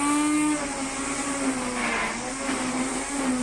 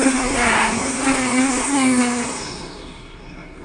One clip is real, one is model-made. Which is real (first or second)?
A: first